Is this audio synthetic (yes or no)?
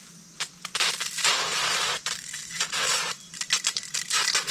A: no